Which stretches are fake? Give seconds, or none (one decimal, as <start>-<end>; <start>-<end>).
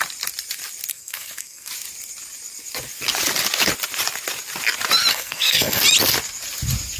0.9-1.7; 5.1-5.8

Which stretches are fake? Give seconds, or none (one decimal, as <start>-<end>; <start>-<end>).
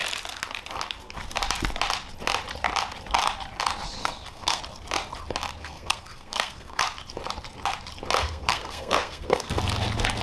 4.0-4.6; 5.6-6.8; 8.2-9.6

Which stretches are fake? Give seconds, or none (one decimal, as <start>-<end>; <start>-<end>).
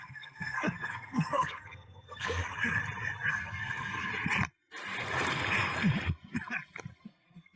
0.0-2.5; 3.3-4.1; 7.0-7.6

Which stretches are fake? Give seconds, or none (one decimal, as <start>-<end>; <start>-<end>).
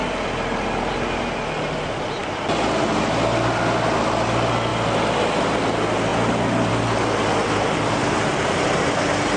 none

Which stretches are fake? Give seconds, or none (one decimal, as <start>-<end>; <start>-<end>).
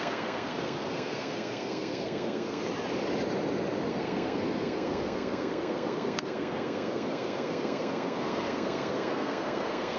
0.0-2.7; 3.9-10.0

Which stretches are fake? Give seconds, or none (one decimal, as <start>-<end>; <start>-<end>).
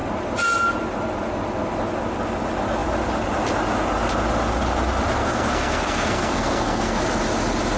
5.2-7.0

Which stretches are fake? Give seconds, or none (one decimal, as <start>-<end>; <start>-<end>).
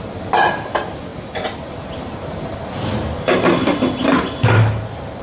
none